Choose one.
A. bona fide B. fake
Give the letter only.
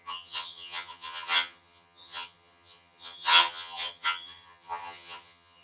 B